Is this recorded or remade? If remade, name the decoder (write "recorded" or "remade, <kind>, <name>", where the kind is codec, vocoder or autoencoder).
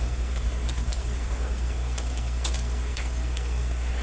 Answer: remade, codec, SNAC